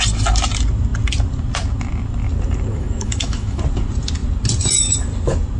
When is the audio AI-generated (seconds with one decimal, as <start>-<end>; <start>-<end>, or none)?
2.7-3.6

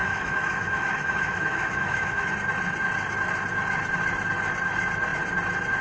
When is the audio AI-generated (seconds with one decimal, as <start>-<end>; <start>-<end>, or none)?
0.0-2.3

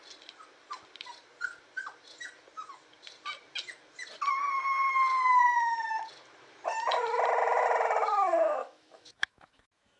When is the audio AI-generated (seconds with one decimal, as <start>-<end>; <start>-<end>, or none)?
8.6-10.0

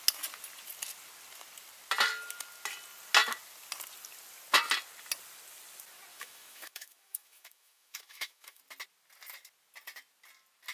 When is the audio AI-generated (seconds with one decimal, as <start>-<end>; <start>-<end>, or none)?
6.1-8.6

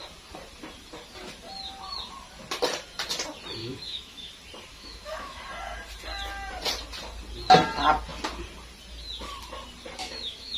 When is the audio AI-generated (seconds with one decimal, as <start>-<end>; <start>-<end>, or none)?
3.6-4.3; 4.7-5.4; 10.0-10.6

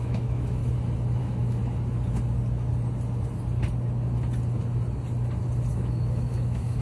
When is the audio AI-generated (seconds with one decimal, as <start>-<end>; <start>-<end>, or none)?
0.0-0.6; 1.2-1.6; 5.7-6.8

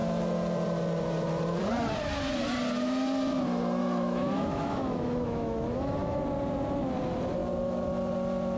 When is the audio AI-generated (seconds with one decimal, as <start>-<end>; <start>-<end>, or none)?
3.8-6.2